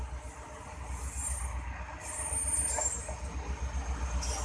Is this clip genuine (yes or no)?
yes